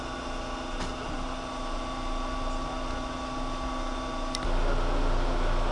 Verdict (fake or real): real